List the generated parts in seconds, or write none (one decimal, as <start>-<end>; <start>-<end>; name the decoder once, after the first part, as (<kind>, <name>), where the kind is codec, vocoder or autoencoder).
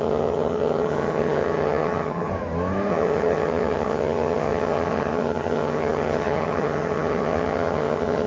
0.0-2.3 (vocoder, HiFi-GAN); 2.9-8.3